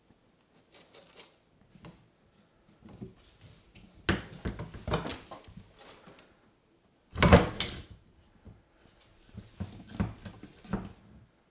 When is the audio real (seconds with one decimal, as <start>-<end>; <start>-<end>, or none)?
0.0-11.5